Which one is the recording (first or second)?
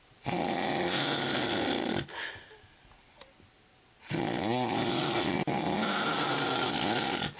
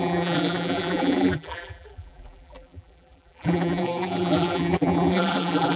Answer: first